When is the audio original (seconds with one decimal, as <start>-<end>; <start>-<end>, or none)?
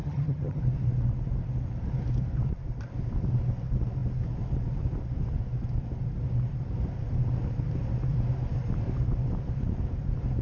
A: 0.6-10.4